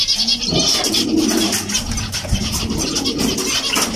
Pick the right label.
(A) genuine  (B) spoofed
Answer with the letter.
A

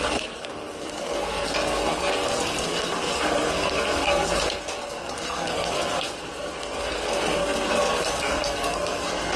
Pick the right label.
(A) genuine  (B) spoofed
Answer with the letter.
B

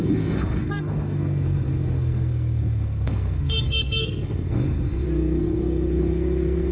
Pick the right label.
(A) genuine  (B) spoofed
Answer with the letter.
B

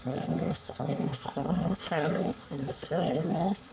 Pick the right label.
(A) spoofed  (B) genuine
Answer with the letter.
A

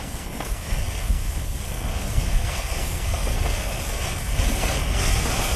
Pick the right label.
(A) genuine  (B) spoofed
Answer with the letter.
B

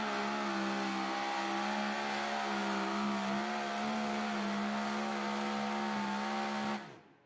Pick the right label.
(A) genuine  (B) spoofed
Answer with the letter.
A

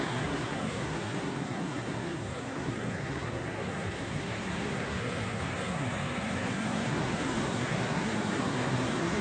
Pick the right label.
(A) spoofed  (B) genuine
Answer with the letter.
A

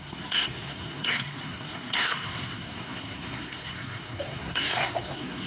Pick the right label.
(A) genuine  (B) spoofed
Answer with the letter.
B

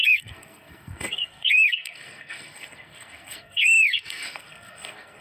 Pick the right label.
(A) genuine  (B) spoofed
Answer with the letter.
B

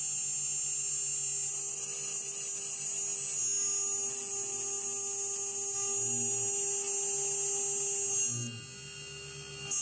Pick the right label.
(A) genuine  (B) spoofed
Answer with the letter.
A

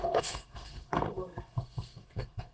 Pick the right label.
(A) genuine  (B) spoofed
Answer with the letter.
B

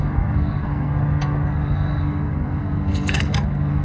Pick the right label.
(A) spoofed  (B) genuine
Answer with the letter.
A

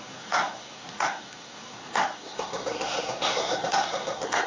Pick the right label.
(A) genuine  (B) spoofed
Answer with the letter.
B